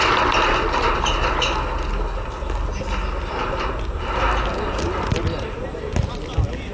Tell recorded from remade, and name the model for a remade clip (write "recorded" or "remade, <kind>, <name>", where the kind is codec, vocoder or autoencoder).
recorded